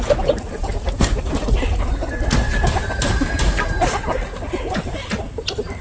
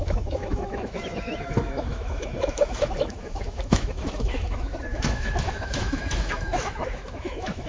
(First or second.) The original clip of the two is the first